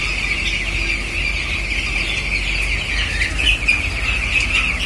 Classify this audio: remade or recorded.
recorded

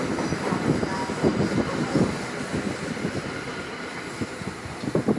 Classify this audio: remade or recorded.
recorded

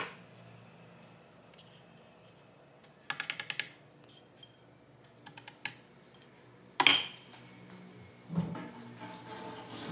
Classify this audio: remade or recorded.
recorded